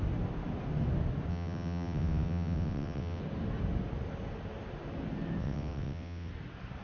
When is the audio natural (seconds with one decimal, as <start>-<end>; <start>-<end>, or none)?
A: 0.0-1.3; 3.2-5.4; 6.3-6.8